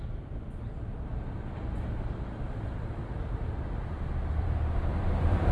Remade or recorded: remade